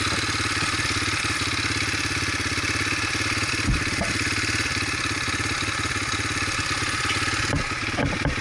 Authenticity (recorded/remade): recorded